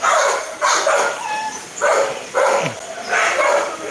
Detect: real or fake real